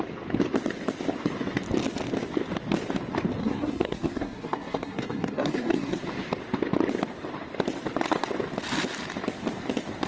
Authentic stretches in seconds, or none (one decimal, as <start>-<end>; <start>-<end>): 0.0-3.4; 6.0-10.1